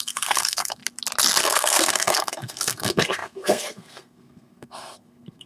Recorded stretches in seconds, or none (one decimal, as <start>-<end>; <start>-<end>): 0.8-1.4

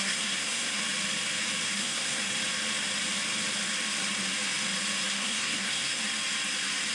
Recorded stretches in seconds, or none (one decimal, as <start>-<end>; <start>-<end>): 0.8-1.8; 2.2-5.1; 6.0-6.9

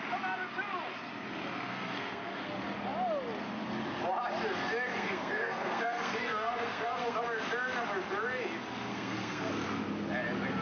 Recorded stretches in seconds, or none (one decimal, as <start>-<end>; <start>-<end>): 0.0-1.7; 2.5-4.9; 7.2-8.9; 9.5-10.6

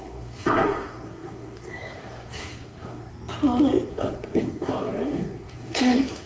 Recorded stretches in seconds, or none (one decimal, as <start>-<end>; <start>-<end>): 3.1-3.9

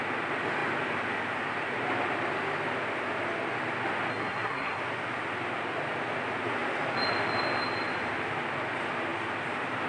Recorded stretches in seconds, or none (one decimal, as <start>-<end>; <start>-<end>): 0.0-4.1; 4.8-9.9

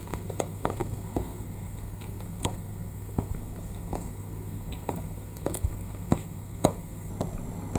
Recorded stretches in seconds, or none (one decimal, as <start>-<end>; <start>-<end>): 7.1-7.8

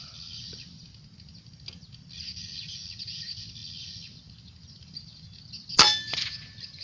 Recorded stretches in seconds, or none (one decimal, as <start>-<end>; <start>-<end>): 0.0-6.8

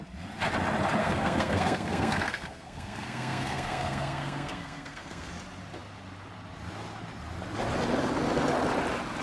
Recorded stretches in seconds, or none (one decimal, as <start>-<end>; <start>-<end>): 0.0-1.0; 5.3-9.2